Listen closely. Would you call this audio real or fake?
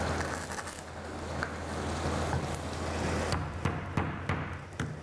real